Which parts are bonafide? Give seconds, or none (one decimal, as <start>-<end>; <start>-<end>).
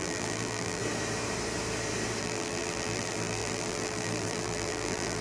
0.8-2.2